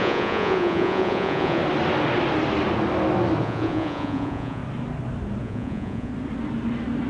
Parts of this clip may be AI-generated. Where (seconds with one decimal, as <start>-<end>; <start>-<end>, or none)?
0.0-1.6; 3.4-4.6; 5.4-6.1